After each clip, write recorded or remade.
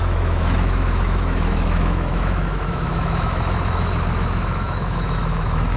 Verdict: remade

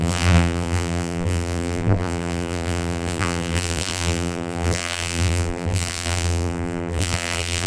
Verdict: remade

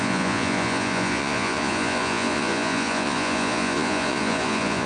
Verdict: remade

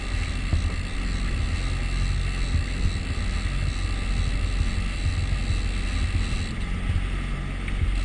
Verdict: recorded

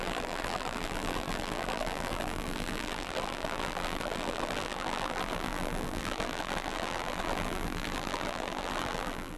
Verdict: remade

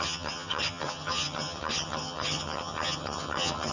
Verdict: remade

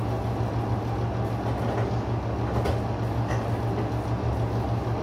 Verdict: recorded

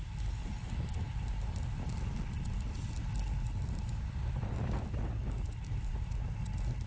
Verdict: recorded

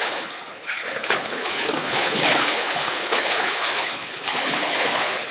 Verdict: remade